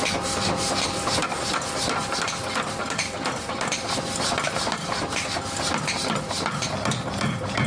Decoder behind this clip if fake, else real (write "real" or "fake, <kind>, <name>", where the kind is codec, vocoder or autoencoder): real